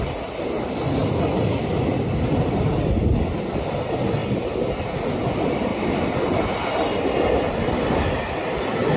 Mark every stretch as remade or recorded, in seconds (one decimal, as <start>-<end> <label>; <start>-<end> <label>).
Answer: 0.0-9.0 recorded